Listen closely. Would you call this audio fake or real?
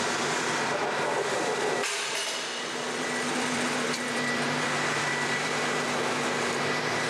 fake